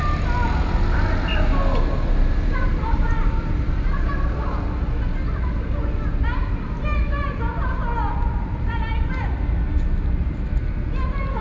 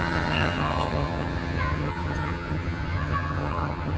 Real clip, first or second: first